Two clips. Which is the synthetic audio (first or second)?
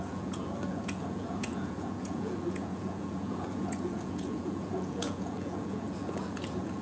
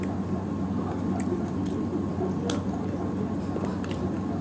first